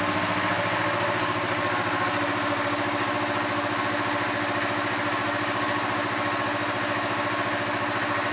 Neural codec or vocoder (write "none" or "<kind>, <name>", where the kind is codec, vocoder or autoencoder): none